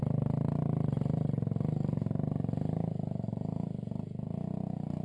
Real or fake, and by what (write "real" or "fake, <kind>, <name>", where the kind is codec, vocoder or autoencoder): real